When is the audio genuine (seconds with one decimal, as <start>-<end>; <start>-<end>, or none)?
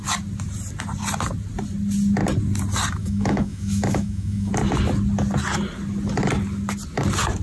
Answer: 0.0-3.0; 4.5-7.4